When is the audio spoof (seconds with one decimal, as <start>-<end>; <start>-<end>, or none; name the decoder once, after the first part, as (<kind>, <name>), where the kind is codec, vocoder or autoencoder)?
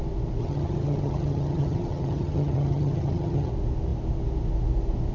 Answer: 0.4-3.5 (vocoder, HiFi-GAN)